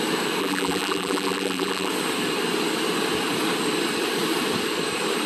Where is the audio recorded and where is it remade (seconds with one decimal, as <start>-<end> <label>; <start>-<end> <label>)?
0.0-0.4 recorded; 0.4-1.9 remade; 1.9-5.3 recorded